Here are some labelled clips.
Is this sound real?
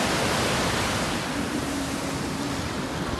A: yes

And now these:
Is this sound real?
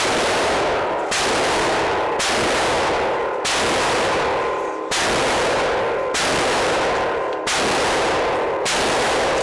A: yes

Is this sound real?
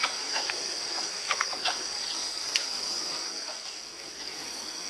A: no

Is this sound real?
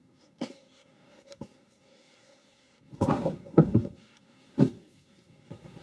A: no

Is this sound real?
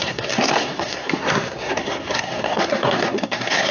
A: no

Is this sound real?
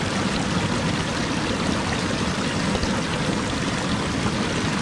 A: yes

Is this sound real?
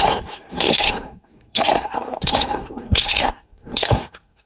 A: no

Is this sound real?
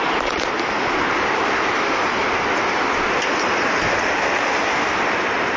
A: yes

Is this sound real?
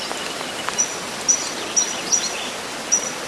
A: yes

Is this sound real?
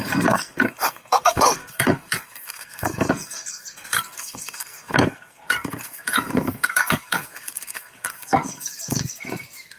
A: no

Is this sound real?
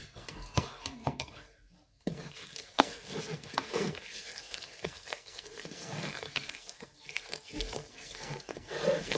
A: no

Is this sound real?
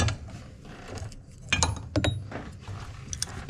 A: yes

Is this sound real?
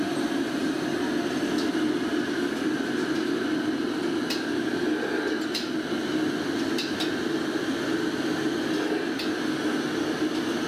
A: yes